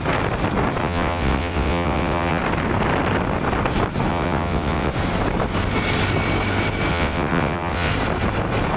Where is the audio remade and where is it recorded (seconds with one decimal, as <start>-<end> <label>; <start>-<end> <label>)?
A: 0.0-0.8 recorded; 0.8-2.4 remade; 2.4-4.1 recorded; 4.1-4.9 remade; 4.9-6.9 recorded; 6.9-7.9 remade; 7.9-8.8 recorded